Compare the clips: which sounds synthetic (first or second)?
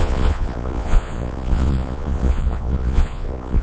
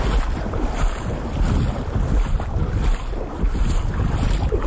first